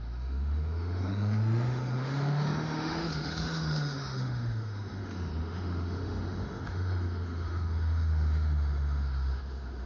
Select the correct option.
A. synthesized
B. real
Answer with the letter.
A